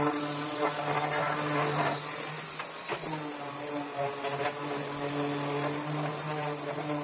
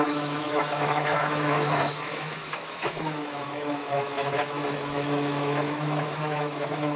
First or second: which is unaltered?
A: first